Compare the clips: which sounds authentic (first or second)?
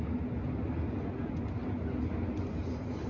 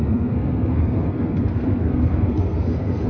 first